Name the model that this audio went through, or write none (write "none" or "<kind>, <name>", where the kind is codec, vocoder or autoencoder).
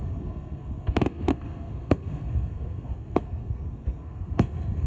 codec, SNAC